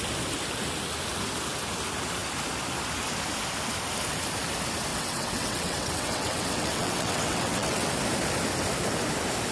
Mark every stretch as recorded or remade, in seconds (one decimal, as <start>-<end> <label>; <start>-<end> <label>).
0.0-4.9 recorded; 4.9-7.9 remade; 7.9-9.5 recorded

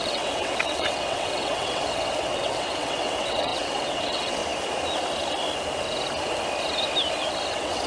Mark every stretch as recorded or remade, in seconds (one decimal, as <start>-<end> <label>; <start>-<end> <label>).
0.0-4.4 remade; 4.4-7.5 recorded; 7.5-7.9 remade

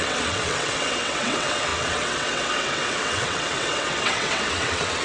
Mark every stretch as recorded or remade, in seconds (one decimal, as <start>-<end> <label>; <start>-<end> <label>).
0.0-5.0 remade

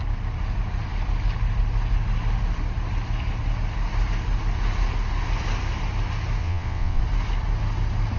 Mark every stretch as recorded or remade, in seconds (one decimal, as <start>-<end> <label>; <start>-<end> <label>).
0.0-6.4 recorded; 6.4-7.0 remade; 7.0-8.2 recorded

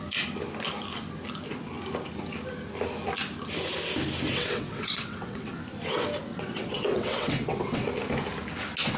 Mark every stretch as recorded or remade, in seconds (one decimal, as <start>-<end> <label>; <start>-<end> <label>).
0.0-4.3 recorded; 4.3-5.5 remade; 5.5-6.3 recorded; 6.3-7.9 remade; 7.9-9.0 recorded